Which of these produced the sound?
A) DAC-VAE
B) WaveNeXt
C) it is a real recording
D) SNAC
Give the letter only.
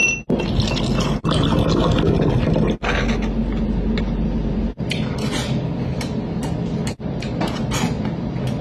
C